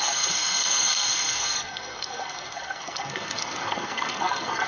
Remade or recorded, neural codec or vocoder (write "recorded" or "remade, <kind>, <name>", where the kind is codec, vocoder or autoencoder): remade, codec, SNAC